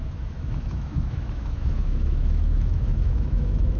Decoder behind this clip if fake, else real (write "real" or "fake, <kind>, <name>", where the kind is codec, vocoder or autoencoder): fake, autoencoder, DAC-VAE